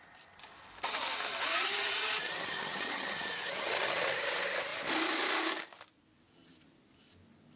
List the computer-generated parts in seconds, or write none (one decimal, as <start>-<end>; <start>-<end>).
1.5-4.1